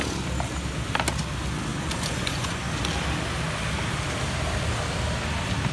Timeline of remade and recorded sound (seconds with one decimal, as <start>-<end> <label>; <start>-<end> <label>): 0.0-1.7 recorded; 1.7-2.7 remade; 2.7-5.7 recorded